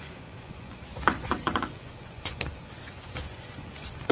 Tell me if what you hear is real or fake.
fake